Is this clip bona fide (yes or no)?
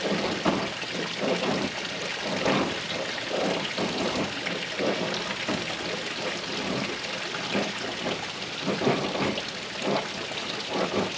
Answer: yes